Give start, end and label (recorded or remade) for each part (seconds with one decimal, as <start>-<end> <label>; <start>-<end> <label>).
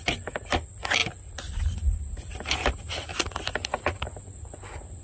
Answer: 0.0-5.0 recorded